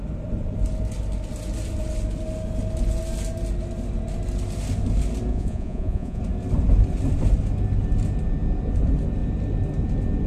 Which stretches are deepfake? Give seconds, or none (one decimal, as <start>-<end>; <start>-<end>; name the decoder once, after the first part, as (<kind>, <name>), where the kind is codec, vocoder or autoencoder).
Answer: 5.3-6.2 (vocoder, Vocos)